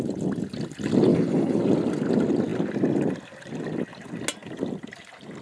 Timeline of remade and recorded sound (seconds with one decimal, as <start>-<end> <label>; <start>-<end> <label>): 0.0-1.1 recorded; 1.1-1.6 remade; 1.6-5.4 recorded